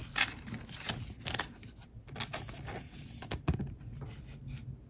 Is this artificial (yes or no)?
no